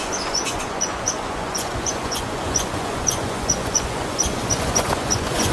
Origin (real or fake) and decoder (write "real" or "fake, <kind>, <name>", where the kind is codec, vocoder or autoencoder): fake, vocoder, Vocos